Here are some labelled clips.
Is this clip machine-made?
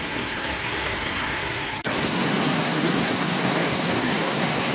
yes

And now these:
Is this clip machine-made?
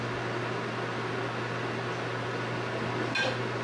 no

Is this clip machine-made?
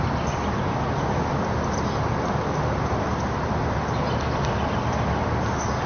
no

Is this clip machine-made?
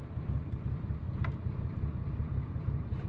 no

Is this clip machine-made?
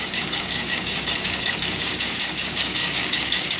yes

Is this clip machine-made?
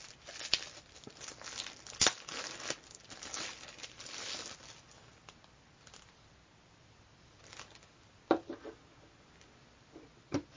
no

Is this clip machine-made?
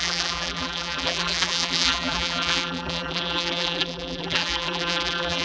yes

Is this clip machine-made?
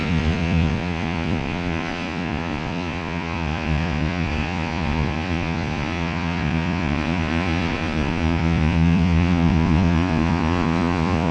yes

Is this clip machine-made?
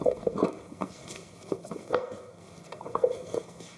yes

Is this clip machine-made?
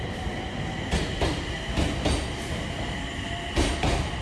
no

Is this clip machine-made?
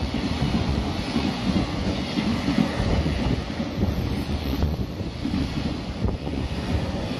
yes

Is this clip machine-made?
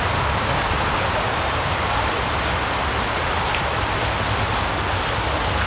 no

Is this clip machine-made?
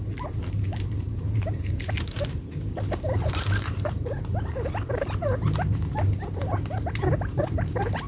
yes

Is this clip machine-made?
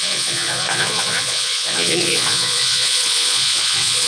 yes